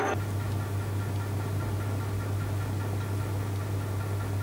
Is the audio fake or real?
real